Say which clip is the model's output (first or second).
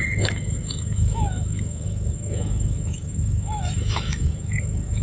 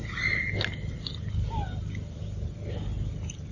first